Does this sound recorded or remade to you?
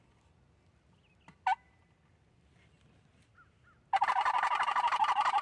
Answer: recorded